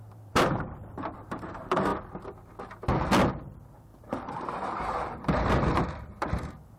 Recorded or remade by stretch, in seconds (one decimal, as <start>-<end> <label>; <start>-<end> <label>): 0.0-1.9 remade; 1.9-3.3 recorded; 3.3-6.8 remade

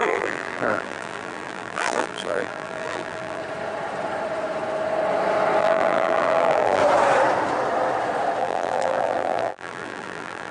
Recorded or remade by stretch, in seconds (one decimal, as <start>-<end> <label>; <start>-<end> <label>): 0.0-3.4 remade; 3.4-5.6 recorded; 5.6-6.8 remade; 6.8-8.4 recorded; 8.4-10.5 remade